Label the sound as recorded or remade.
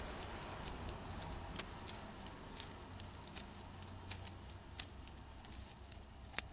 recorded